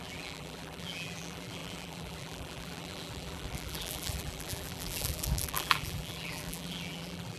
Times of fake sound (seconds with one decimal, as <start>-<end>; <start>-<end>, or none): 0.0-7.4